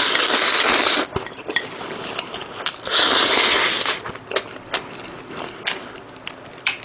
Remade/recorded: recorded